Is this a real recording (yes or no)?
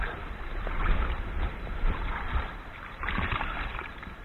no